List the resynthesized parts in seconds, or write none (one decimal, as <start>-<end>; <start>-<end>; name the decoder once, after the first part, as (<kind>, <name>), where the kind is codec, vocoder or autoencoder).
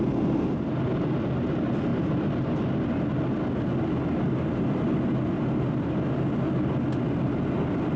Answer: none